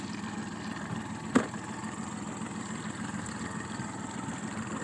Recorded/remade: recorded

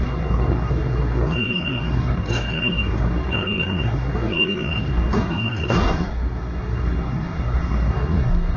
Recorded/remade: remade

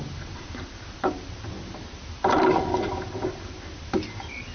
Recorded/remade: recorded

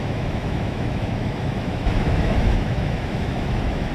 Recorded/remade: remade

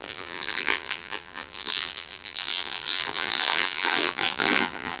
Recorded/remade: remade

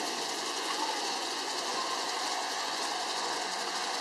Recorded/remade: remade